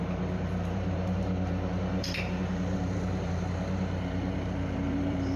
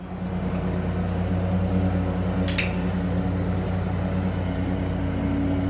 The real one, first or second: second